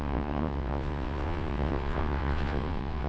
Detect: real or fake fake